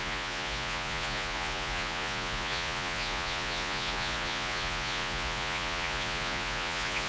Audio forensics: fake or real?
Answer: fake